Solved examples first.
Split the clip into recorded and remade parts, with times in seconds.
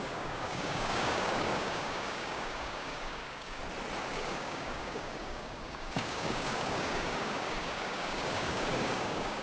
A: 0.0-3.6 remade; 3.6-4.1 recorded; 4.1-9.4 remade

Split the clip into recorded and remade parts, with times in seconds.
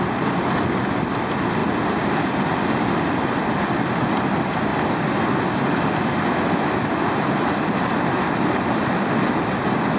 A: 0.0-10.0 recorded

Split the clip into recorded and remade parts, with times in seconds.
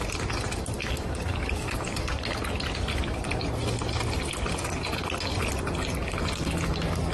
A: 0.0-0.8 recorded; 0.8-2.3 remade; 2.3-2.9 recorded; 2.9-3.5 remade; 3.5-6.0 recorded; 6.0-7.1 remade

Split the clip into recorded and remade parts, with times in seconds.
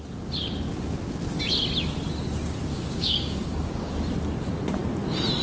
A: 0.0-2.7 recorded; 2.7-3.9 remade; 3.9-5.4 recorded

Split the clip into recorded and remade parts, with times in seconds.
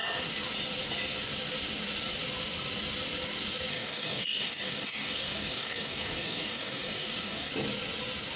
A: 0.0-3.7 recorded; 3.7-7.5 remade; 7.5-8.4 recorded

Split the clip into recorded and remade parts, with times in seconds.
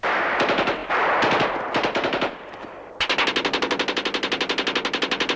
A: 0.0-5.4 recorded